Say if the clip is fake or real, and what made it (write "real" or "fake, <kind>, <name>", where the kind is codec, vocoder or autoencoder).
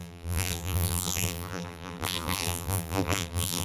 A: fake, vocoder, BigVGAN v2